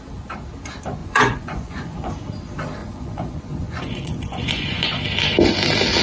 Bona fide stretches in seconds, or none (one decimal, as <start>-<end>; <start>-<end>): 0.0-1.0; 2.1-2.8; 5.0-6.0